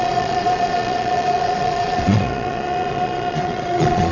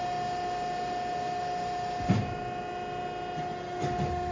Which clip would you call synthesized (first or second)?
first